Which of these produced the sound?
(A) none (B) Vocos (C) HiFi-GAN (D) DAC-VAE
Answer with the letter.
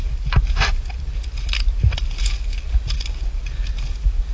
A